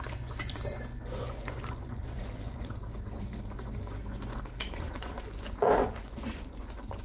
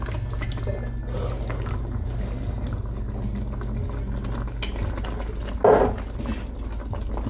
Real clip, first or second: second